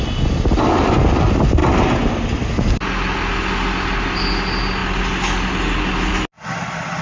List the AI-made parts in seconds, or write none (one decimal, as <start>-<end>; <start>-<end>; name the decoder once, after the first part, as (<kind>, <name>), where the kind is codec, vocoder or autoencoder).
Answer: none